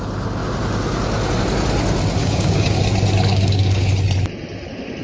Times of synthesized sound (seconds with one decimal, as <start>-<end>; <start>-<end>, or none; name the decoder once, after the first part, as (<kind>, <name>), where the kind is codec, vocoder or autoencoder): 2.2-2.8 (codec, DAC); 3.3-3.9